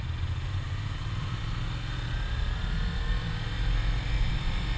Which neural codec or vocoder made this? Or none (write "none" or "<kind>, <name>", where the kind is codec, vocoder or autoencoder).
none